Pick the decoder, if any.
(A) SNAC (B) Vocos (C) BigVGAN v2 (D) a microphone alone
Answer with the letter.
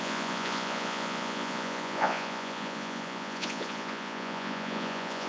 B